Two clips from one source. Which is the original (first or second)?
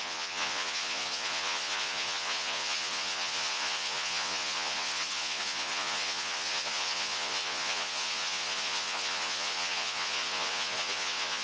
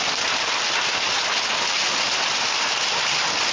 second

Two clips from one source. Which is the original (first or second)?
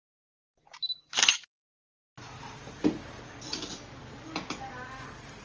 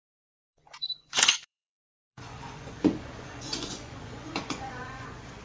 first